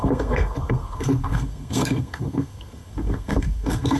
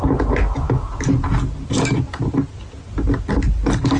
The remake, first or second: first